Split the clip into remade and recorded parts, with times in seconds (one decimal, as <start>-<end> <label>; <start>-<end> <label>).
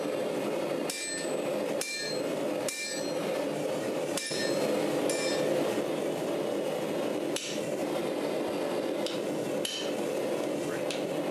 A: 0.0-3.2 recorded; 3.2-4.2 remade; 4.2-7.8 recorded; 7.8-8.4 remade; 8.4-11.3 recorded